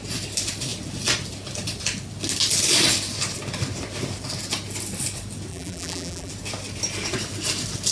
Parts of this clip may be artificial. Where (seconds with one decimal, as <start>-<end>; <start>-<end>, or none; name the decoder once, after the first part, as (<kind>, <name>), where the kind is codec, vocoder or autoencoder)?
5.5-6.3 (vocoder, BigVGAN v2)